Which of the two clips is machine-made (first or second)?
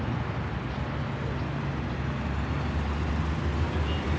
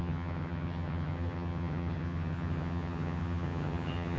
second